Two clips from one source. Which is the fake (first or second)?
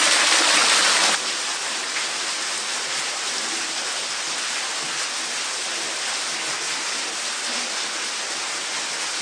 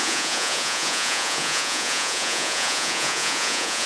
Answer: second